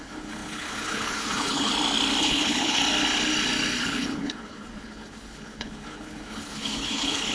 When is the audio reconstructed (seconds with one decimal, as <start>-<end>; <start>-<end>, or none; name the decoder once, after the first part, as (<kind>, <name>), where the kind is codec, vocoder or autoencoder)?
0.0-1.7 (codec, HILCodec); 2.2-2.8; 3.8-7.3